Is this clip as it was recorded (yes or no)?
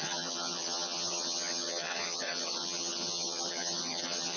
no